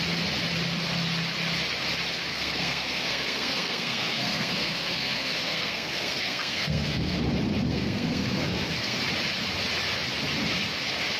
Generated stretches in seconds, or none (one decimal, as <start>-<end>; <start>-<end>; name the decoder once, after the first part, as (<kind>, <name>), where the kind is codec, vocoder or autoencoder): 2.3-7.2 (codec, SNAC); 7.7-9.0